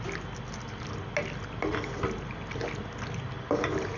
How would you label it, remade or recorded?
recorded